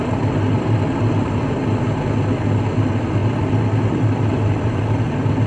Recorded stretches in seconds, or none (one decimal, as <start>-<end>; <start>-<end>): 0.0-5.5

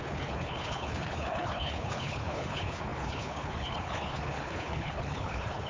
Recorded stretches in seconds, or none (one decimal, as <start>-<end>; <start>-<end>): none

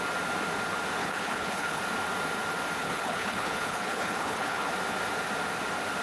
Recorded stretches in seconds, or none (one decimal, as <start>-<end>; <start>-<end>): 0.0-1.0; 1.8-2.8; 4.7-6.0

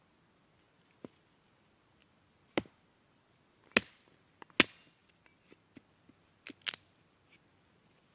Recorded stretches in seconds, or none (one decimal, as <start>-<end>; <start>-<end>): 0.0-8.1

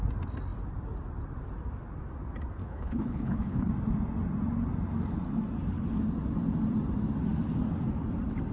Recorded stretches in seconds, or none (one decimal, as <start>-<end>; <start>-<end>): 0.0-2.6; 3.7-8.5

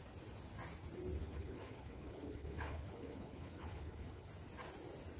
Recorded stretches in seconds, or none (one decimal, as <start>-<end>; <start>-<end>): 0.0-1.2; 4.3-5.2

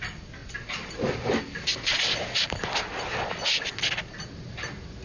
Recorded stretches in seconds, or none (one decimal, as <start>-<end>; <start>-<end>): 0.0-5.0